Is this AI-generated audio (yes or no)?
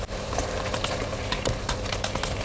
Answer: yes